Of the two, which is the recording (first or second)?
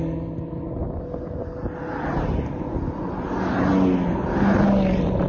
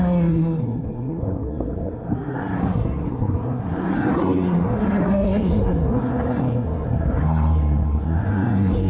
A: first